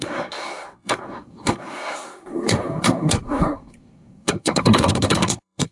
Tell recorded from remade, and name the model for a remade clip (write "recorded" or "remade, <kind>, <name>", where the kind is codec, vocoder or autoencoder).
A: remade, codec, SNAC